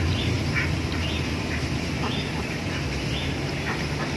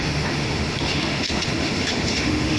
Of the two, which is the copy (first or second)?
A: second